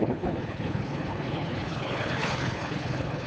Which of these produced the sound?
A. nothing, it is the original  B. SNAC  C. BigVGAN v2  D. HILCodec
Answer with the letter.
D